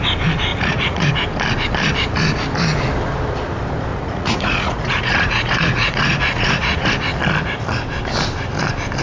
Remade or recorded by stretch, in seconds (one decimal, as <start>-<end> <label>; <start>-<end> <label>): 0.0-0.5 recorded; 0.5-1.1 remade; 1.1-3.9 recorded; 3.9-6.9 remade; 6.9-9.0 recorded